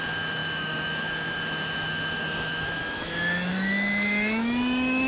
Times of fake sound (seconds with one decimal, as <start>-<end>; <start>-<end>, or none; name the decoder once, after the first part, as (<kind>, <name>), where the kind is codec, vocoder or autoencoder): 0.0-5.1 (autoencoder, DAC-VAE)